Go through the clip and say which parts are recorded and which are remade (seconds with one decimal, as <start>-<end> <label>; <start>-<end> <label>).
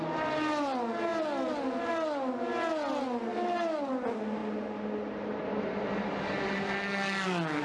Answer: 0.0-7.6 recorded